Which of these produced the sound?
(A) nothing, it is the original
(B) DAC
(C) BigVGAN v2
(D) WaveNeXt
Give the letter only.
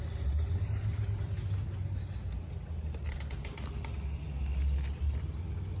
A